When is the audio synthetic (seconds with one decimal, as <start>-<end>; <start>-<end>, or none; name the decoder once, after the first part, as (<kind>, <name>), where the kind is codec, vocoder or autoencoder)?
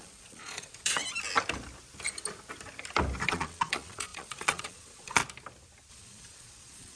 0.0-1.0 (vocoder, Vocos); 3.3-5.2; 5.9-7.0